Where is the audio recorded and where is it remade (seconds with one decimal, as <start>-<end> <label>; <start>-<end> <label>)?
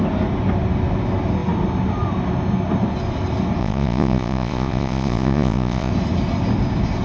0.0-3.6 recorded; 3.6-5.9 remade; 5.9-7.0 recorded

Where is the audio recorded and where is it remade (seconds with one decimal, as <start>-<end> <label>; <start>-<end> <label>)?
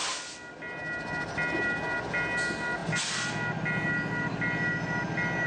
0.0-5.5 recorded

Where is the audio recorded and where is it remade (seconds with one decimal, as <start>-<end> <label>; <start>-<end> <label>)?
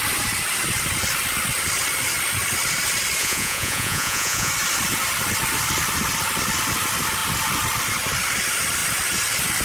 0.0-3.2 recorded; 3.2-4.5 remade; 4.5-9.6 recorded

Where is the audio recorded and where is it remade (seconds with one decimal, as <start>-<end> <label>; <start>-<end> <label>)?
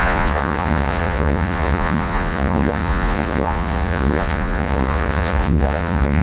0.0-6.2 remade